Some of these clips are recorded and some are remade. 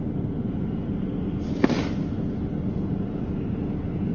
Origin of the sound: recorded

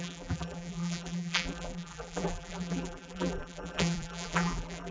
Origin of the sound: remade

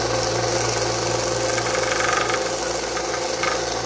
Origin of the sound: recorded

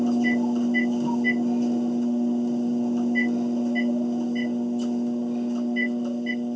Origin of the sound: recorded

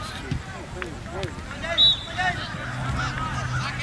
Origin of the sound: recorded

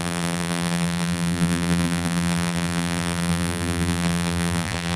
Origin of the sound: remade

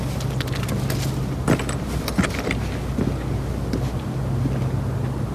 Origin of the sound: recorded